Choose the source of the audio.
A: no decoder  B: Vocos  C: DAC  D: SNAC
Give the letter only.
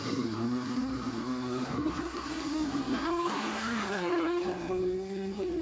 D